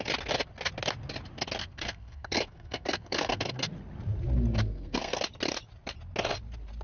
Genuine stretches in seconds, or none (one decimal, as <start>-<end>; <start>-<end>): 0.0-1.6; 3.7-4.6; 5.2-6.8